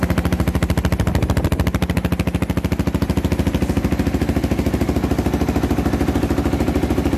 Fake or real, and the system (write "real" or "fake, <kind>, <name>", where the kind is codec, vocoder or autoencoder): real